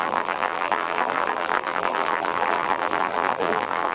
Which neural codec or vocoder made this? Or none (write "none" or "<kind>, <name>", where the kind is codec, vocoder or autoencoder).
vocoder, BigVGAN v2